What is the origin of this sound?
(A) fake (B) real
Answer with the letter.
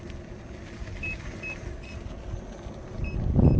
B